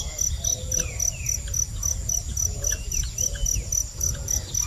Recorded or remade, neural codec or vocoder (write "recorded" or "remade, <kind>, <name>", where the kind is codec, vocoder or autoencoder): recorded